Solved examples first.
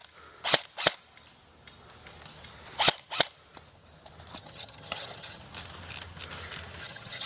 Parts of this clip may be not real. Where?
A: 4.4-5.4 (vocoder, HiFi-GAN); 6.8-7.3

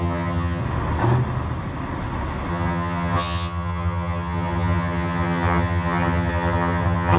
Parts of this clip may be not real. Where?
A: 0.0-0.6 (vocoder, HiFi-GAN); 2.5-7.2

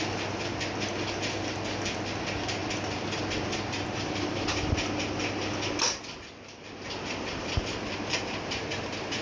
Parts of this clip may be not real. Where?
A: none

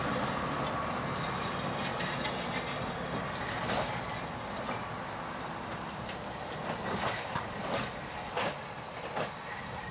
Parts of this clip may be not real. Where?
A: none

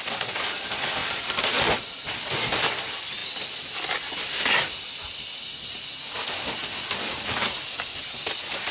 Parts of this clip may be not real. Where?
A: none